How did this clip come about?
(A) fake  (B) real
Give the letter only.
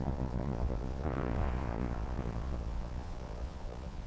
A